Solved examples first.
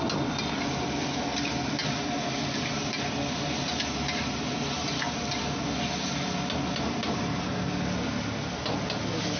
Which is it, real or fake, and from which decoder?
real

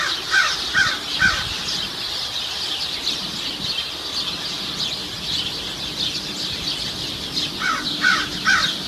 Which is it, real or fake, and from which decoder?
real